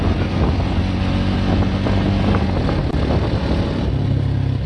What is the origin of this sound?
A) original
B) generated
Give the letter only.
A